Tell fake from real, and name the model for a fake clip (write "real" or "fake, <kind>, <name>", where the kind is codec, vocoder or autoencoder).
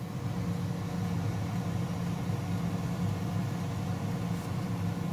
real